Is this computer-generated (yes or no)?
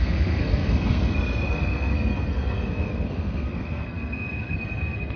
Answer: yes